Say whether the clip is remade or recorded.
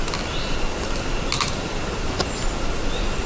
recorded